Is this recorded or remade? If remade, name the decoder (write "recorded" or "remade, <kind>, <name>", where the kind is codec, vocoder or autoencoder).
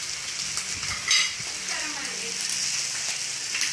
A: recorded